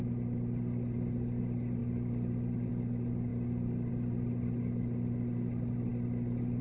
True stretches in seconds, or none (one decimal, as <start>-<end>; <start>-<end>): 0.0-6.6